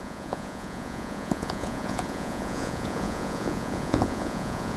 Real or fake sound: fake